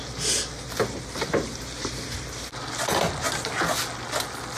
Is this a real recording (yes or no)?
yes